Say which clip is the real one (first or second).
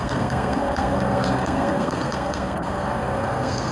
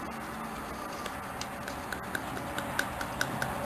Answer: second